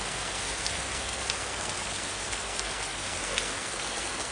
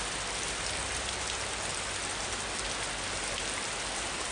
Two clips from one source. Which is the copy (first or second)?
first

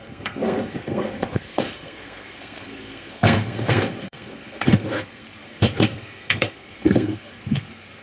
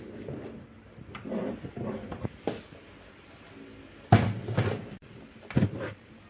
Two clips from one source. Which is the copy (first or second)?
first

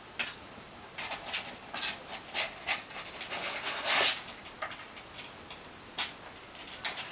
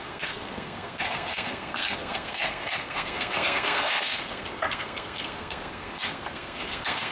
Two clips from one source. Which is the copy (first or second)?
second